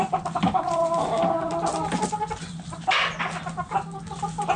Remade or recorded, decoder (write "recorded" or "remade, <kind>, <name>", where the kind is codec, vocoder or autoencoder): recorded